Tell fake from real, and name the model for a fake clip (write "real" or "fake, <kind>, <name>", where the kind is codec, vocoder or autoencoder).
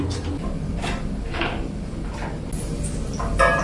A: real